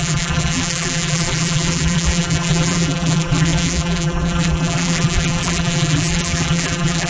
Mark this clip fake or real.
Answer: fake